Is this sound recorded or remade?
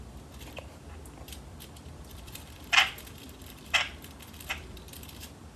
remade